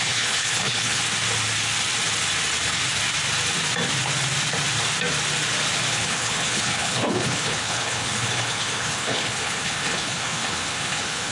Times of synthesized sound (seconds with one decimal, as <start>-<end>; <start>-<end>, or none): 0.0-1.0; 5.9-11.3